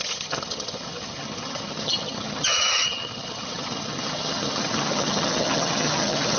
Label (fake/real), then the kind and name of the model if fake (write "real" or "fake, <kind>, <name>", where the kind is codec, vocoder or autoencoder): fake, vocoder, HiFi-GAN